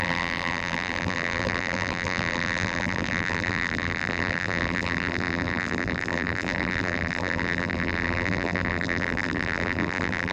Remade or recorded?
remade